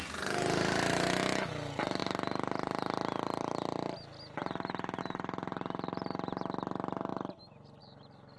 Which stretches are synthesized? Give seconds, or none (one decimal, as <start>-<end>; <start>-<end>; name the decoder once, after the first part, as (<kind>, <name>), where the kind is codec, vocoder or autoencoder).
0.9-1.5 (autoencoder, DAC-VAE)